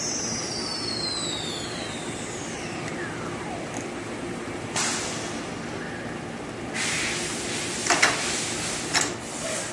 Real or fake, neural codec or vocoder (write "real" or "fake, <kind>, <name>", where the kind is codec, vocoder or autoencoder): real